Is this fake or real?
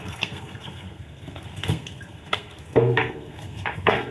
fake